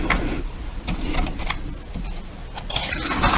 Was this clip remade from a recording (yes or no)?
yes